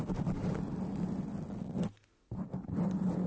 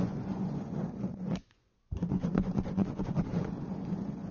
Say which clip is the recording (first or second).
first